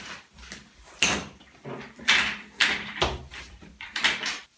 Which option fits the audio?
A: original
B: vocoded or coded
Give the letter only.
B